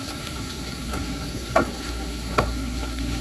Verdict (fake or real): fake